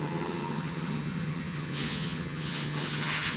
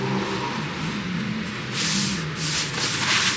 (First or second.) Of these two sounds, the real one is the second